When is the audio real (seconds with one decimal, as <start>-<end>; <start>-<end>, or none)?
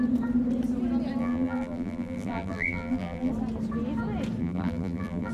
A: 0.0-1.2; 3.3-4.4